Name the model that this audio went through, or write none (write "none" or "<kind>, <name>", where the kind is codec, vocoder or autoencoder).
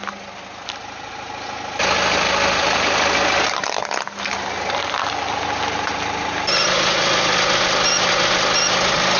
none